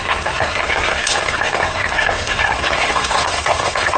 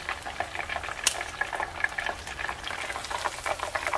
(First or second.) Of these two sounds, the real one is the second